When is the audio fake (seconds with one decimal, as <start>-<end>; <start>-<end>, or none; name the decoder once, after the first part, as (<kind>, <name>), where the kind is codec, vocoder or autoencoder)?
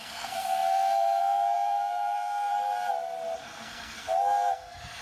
0.0-2.5 (codec, SNAC); 3.4-5.0